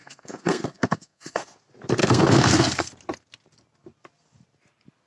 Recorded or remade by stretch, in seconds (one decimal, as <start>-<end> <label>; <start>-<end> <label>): 0.0-1.6 remade; 1.6-2.0 recorded; 2.0-2.9 remade; 2.9-5.1 recorded